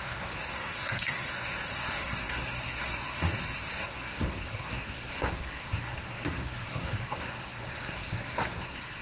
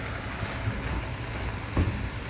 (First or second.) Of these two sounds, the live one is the second